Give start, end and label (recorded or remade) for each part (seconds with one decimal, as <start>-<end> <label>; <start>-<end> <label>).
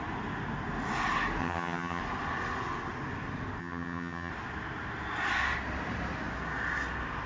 0.0-1.4 recorded; 1.4-2.0 remade; 2.0-3.6 recorded; 3.6-4.3 remade; 4.3-7.3 recorded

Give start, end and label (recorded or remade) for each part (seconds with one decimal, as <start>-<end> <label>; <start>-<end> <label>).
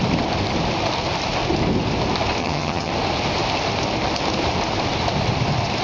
0.0-2.4 recorded; 2.4-2.9 remade; 2.9-5.8 recorded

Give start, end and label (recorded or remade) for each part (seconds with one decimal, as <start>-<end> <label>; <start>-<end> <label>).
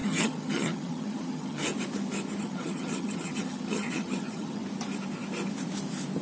0.0-1.6 remade; 1.6-2.4 recorded; 2.4-4.6 remade; 4.6-6.2 recorded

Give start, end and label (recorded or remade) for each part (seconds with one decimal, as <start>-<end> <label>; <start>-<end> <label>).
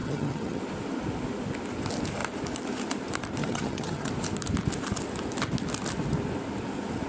0.0-0.6 remade; 0.6-3.4 recorded; 3.4-4.1 remade; 4.1-7.1 recorded